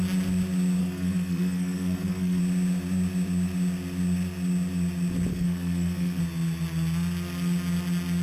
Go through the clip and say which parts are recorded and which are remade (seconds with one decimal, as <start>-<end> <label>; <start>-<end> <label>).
0.0-0.8 recorded; 0.8-2.4 remade; 2.4-5.3 recorded; 5.3-6.2 remade; 6.2-8.2 recorded